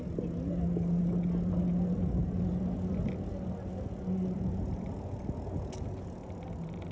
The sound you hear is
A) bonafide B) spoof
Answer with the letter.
A